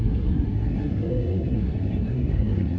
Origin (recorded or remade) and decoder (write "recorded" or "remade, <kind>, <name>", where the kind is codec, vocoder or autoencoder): remade, codec, SNAC